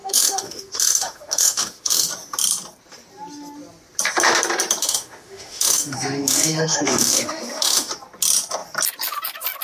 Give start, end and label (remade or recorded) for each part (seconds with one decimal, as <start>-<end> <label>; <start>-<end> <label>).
0.0-2.1 remade; 2.1-4.8 recorded; 4.8-7.9 remade; 7.9-9.6 recorded